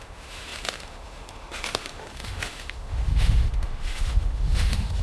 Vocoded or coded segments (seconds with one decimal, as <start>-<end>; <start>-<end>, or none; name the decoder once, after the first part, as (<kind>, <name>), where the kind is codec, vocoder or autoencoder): 0.0-5.0 (autoencoder, DAC-VAE)